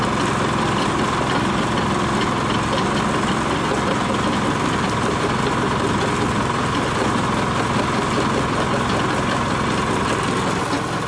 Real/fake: real